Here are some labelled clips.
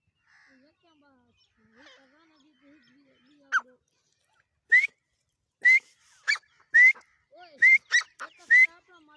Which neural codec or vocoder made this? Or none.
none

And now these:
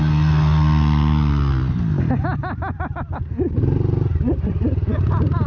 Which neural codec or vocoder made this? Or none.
none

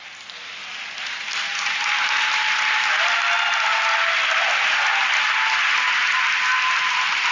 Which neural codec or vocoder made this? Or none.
none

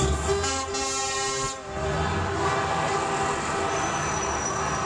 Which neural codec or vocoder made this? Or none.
none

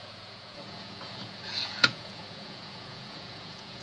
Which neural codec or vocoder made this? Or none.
vocoder, Vocos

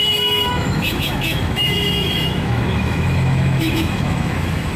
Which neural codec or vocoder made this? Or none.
autoencoder, DAC-VAE